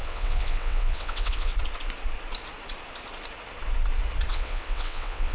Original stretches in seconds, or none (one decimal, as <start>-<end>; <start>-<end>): 1.5-4.3